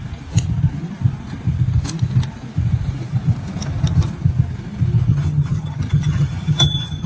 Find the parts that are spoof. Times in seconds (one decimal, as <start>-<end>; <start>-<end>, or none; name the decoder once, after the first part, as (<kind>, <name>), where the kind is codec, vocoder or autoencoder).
5.1-7.1 (vocoder, HiFi-GAN)